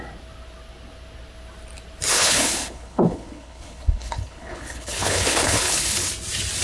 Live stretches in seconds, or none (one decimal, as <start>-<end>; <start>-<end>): 0.0-2.1; 6.1-6.6

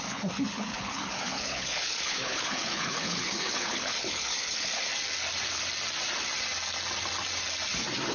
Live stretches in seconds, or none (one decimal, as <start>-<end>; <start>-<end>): 4.9-8.1

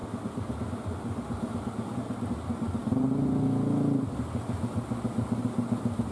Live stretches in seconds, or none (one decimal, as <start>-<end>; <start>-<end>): 0.0-6.1

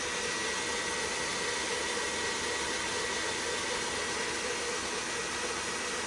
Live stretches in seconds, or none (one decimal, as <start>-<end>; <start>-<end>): 0.0-6.1

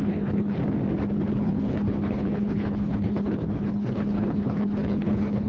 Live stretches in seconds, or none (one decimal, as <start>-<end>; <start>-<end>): 0.6-1.3